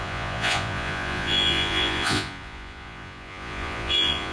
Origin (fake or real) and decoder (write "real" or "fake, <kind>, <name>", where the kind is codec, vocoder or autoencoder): fake, vocoder, Vocos